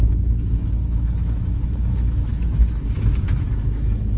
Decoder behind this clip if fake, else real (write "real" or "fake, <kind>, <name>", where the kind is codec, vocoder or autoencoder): fake, autoencoder, DAC-VAE